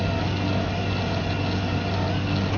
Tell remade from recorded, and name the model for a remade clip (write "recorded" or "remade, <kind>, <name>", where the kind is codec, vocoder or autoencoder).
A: recorded